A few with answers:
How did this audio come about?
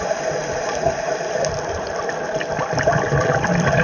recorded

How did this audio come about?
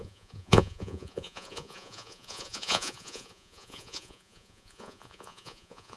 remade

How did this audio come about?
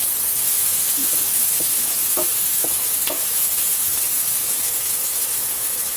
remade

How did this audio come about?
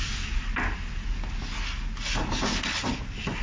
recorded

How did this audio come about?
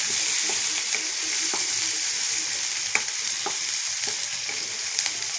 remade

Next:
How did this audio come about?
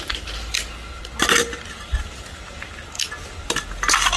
recorded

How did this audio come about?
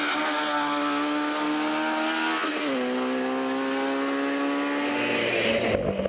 recorded